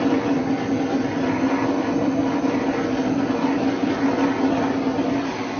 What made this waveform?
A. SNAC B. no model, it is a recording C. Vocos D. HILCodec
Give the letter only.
B